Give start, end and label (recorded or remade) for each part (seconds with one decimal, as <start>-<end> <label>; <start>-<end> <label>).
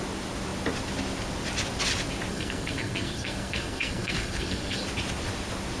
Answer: 0.0-2.3 recorded; 2.3-4.8 remade; 4.8-5.8 recorded